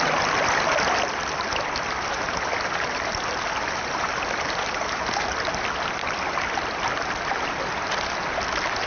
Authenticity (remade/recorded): recorded